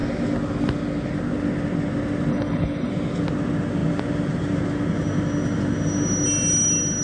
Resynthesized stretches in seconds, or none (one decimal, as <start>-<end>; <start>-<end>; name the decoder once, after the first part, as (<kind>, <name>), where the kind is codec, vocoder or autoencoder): 2.3-2.9 (codec, HILCodec)